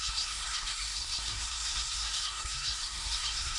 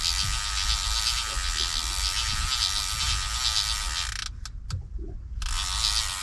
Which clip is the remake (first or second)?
first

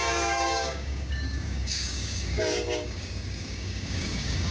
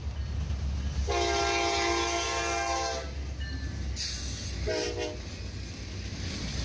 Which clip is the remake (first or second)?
first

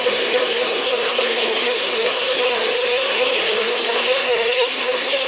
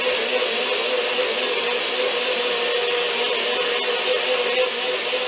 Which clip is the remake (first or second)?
first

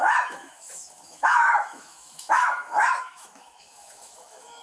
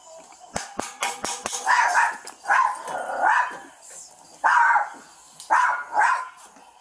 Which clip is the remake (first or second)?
first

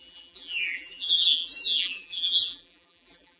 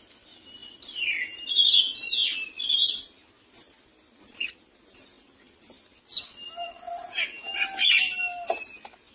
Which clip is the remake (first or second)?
first